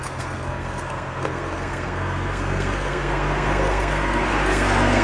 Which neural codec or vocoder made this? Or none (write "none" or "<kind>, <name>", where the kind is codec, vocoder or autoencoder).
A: codec, SNAC